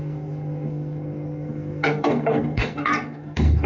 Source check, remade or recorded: remade